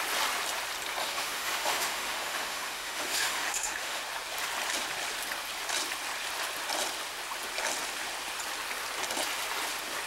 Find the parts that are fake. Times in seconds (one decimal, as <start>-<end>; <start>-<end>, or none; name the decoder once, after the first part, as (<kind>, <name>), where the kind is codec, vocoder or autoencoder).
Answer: 1.0-4.0 (autoencoder, DAC-VAE)